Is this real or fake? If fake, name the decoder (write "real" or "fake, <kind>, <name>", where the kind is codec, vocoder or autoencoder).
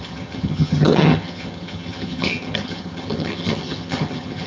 fake, vocoder, HiFi-GAN